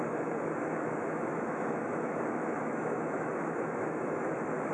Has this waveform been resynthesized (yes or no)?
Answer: yes